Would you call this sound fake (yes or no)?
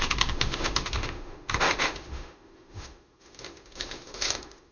yes